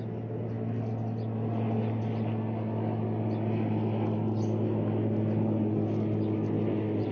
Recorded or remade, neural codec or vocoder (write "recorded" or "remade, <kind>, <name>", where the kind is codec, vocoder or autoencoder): recorded